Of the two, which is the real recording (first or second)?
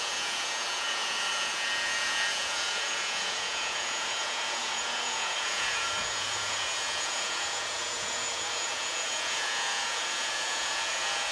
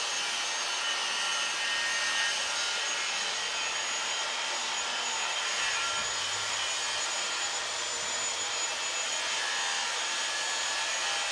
second